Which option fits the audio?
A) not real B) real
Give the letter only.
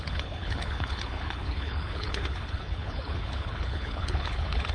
A